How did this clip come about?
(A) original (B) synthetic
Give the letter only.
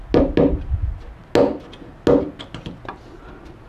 A